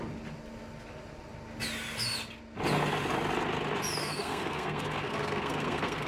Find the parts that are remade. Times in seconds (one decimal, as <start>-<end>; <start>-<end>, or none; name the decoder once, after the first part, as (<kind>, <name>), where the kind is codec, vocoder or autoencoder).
4.0-6.1 (codec, SNAC)